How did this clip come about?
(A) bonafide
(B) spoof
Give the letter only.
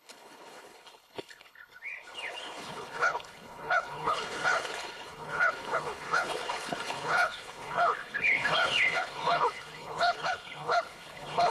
B